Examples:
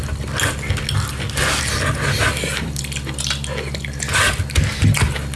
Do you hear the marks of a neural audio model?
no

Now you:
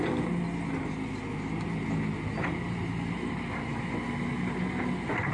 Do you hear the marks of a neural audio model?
no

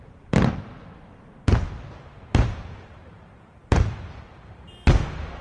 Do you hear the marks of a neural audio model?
yes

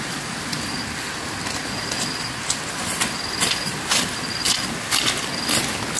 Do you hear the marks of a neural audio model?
no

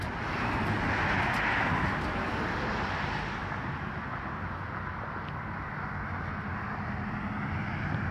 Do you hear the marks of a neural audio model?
no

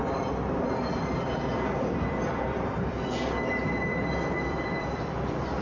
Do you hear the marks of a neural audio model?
yes